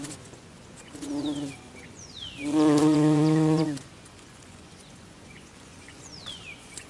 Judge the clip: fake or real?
fake